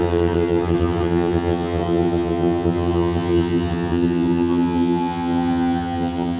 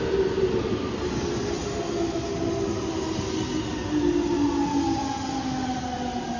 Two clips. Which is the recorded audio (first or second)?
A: second